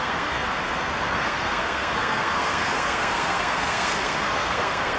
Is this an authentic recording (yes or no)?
no